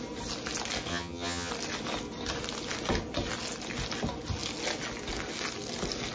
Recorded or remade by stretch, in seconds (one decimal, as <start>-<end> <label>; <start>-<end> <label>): 0.0-0.9 recorded; 0.9-1.5 remade; 1.5-6.1 recorded